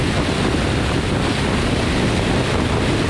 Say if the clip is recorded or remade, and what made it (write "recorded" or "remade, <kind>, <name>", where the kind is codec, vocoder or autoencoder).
recorded